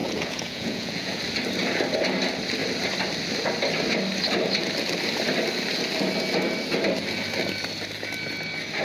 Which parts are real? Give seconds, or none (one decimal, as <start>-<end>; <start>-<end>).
1.2-8.8